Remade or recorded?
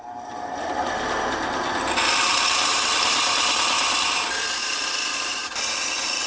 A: recorded